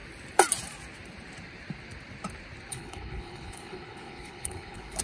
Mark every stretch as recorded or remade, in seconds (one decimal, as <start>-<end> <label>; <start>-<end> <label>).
0.0-2.7 recorded; 2.7-5.0 remade